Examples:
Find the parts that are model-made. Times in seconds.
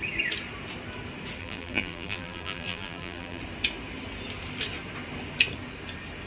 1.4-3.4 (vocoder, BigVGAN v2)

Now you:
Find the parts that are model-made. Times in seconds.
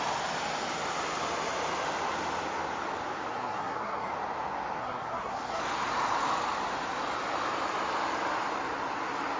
3.3-4.1 (codec, SNAC); 4.8-5.6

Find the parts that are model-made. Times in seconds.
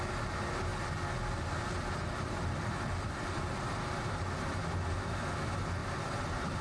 0.7-4.6 (vocoder, BigVGAN v2); 5.8-6.6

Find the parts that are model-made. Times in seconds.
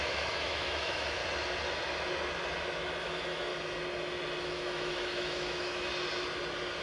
0.0-1.2 (autoencoder, DAC-VAE); 3.0-3.5; 4.4-5.9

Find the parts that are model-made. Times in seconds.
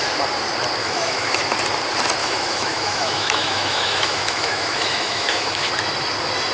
0.8-1.4 (autoencoder, DAC-VAE); 2.2-5.7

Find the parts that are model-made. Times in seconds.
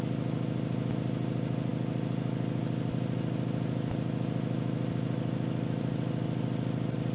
none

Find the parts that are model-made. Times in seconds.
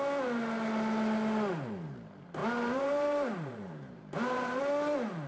2.4-4.6 (vocoder, BigVGAN v2)